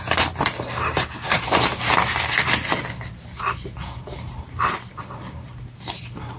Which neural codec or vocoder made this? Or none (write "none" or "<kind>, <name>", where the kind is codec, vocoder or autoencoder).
vocoder, BigVGAN v2